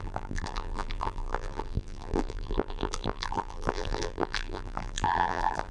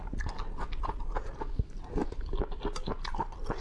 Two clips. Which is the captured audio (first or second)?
second